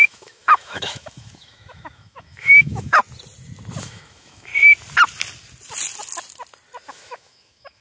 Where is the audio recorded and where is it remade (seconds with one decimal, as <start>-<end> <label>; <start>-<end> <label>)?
0.0-3.0 remade; 3.0-3.8 recorded; 3.8-4.5 remade; 4.5-6.9 recorded; 6.9-7.8 remade